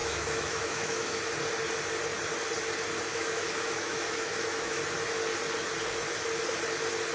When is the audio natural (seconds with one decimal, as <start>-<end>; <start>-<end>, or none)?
1.2-3.1; 4.8-7.1